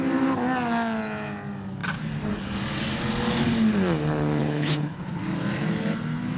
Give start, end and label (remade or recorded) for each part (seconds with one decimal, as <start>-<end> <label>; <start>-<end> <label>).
0.0-4.4 recorded; 4.4-5.2 remade; 5.2-6.4 recorded